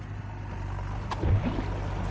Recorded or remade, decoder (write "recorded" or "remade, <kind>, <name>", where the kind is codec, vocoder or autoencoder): recorded